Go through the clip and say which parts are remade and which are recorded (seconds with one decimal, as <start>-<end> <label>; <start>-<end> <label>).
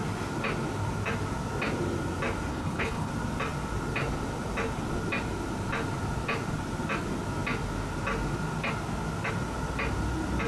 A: 0.0-2.5 recorded; 2.5-3.1 remade; 3.1-10.5 recorded